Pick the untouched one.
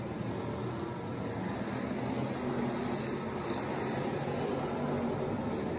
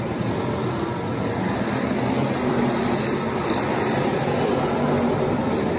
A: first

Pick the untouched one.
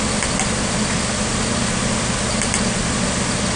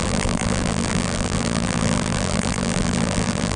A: first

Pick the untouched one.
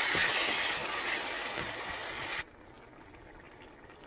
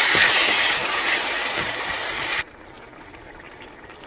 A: first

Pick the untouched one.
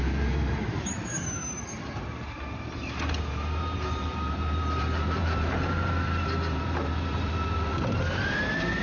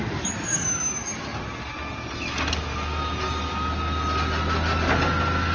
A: second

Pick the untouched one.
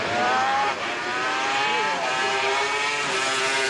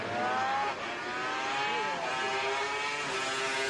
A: second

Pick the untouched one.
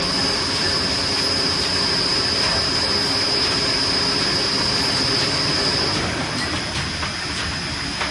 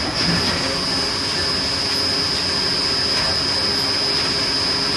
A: second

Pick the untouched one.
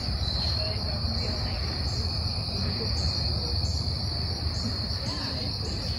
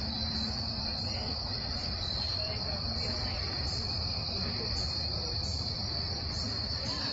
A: first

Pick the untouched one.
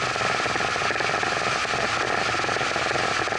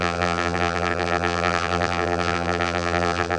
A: first